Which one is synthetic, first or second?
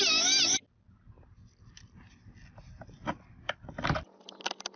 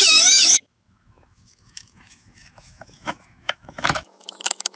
second